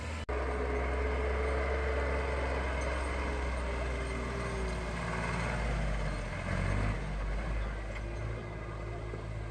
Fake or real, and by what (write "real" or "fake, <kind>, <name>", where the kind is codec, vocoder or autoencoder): real